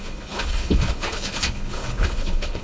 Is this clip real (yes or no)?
no